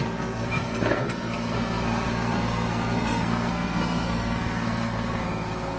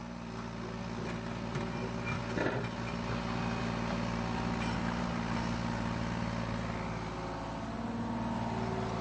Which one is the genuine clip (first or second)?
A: second